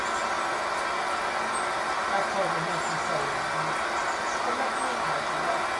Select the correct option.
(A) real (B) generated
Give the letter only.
A